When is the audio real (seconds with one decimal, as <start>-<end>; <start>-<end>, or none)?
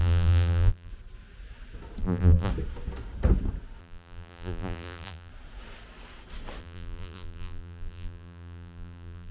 0.9-2.0; 2.5-3.8; 5.3-6.6